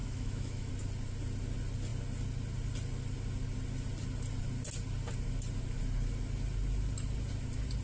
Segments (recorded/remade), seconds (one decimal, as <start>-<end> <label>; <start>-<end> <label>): 0.0-0.7 remade; 0.7-7.8 recorded